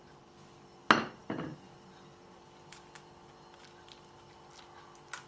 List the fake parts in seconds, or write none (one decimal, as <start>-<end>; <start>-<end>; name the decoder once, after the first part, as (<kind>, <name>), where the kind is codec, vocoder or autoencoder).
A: none